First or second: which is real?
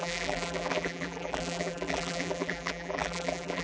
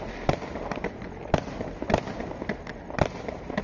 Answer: second